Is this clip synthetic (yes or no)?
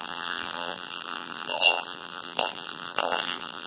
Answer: yes